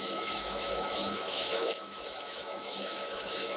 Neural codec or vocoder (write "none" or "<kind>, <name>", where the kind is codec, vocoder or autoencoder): autoencoder, DAC-VAE